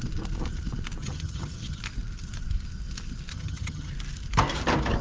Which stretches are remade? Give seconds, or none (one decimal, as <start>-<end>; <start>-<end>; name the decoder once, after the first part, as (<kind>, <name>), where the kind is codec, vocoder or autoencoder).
1.0-1.8 (vocoder, HiFi-GAN); 3.3-3.9